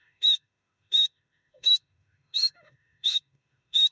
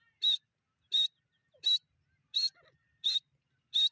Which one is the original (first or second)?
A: second